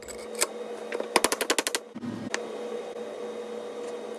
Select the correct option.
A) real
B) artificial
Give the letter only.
A